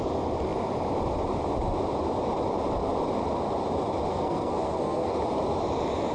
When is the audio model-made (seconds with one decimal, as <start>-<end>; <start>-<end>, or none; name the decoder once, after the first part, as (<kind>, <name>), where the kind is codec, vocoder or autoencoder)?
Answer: 4.1-5.2 (codec, SNAC)